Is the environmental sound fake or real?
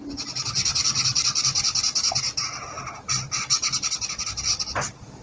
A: real